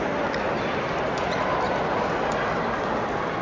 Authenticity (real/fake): real